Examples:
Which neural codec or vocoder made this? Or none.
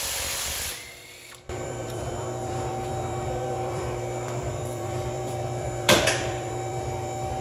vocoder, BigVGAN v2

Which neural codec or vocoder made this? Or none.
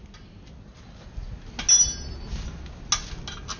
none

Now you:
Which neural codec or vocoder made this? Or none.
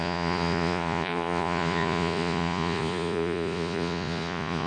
vocoder, Vocos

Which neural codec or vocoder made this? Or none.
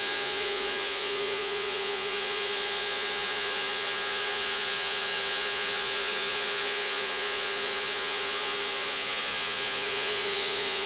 vocoder, Vocos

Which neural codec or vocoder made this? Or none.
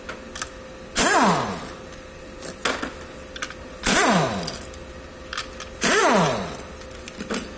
none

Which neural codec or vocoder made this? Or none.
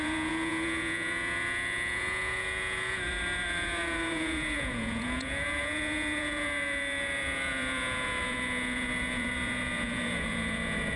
vocoder, Vocos